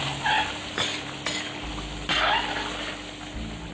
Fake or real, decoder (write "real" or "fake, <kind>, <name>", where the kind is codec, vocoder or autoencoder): real